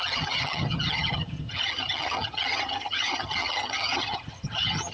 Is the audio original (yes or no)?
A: no